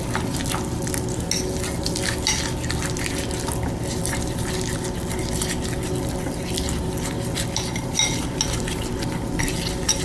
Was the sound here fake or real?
real